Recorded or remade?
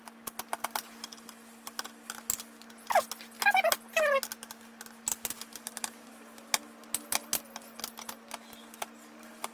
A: recorded